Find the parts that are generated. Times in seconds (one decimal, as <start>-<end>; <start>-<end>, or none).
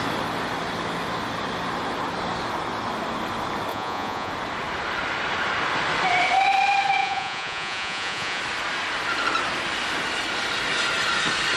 3.7-4.3; 7.0-8.4